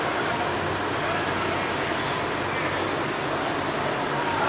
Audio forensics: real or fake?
real